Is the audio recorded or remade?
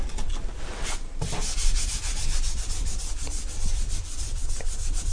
recorded